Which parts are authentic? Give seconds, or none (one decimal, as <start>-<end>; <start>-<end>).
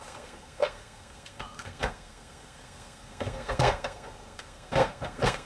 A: none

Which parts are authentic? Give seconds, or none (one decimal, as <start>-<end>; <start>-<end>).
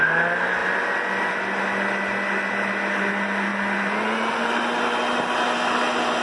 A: 0.0-6.2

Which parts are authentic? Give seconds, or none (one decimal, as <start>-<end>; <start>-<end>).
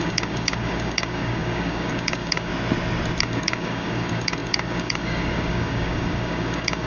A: 2.5-3.2